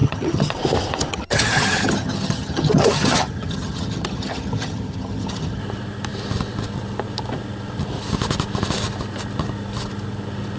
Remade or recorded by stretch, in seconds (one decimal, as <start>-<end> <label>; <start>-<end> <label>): 0.0-0.5 remade; 0.5-1.1 recorded; 1.1-5.6 remade; 5.6-10.6 recorded